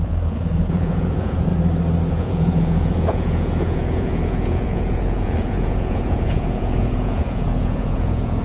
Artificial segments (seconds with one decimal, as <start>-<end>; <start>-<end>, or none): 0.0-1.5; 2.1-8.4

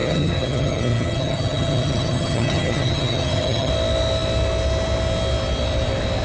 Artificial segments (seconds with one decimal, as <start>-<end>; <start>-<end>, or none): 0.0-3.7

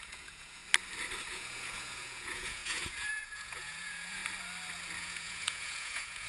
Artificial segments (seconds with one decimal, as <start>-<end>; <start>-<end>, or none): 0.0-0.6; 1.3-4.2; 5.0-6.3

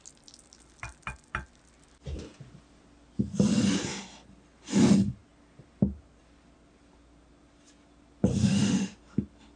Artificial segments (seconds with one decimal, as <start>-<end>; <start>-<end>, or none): 8.3-9.0